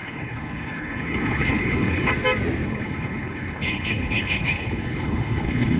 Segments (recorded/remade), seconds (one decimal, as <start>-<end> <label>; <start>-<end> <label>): 0.0-2.1 remade; 2.1-2.6 recorded; 2.6-5.8 remade